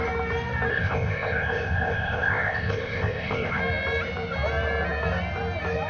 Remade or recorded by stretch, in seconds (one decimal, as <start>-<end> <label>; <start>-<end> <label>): 0.0-0.7 recorded; 0.7-3.6 remade; 3.6-5.9 recorded